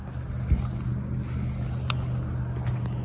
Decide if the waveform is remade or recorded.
recorded